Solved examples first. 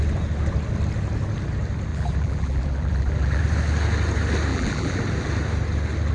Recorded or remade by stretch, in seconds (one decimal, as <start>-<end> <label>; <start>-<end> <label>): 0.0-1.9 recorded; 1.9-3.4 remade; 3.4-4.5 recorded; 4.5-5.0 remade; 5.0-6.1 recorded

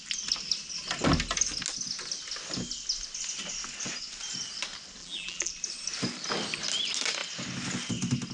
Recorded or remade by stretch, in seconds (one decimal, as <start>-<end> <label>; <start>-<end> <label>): 0.0-5.0 recorded; 5.0-5.5 remade; 5.5-8.3 recorded

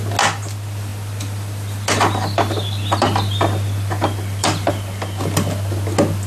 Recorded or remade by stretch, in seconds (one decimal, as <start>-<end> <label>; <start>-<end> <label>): 0.0-0.9 recorded; 0.9-4.7 remade; 4.7-6.3 recorded